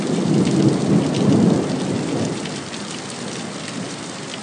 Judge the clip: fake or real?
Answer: real